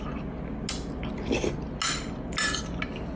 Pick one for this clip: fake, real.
real